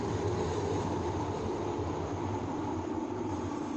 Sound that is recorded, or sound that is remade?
recorded